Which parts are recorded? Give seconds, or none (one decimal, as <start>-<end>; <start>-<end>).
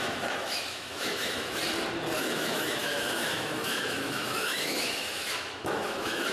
1.6-2.2